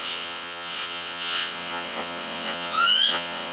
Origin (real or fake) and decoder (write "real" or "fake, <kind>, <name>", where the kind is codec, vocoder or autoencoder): fake, vocoder, WaveNeXt